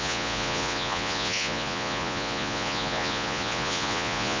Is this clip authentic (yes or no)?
no